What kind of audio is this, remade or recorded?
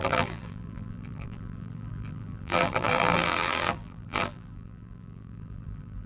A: remade